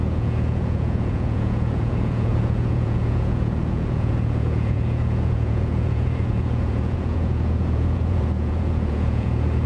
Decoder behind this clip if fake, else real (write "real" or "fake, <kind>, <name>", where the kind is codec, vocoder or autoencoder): fake, vocoder, Vocos